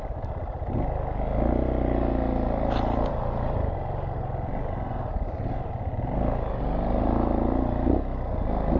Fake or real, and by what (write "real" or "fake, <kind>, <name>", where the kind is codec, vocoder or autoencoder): real